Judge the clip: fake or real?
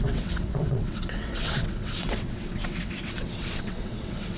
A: fake